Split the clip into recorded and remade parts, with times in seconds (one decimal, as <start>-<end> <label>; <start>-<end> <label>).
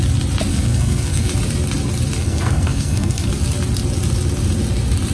0.0-0.5 recorded; 0.5-1.3 remade; 1.3-2.2 recorded; 2.2-3.3 remade; 3.3-5.1 recorded